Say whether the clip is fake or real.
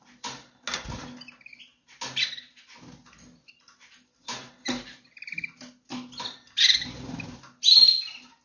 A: real